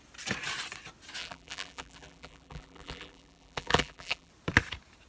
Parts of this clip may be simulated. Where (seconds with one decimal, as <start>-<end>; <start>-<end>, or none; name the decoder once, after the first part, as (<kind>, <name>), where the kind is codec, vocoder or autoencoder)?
1.2-4.3 (vocoder, BigVGAN v2)